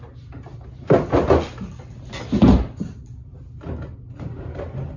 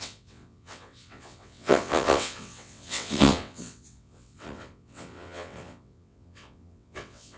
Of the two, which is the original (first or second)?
first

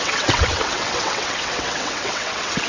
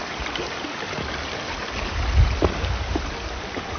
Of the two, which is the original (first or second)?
second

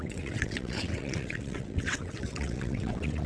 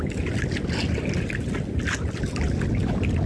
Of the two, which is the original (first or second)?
second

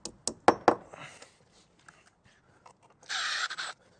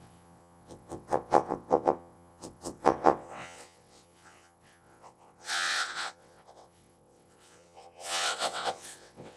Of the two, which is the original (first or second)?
first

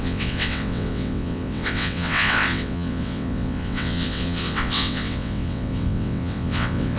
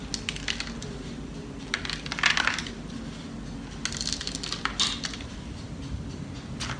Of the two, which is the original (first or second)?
second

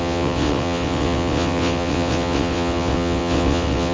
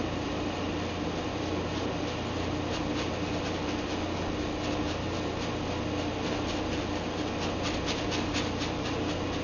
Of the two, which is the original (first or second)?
second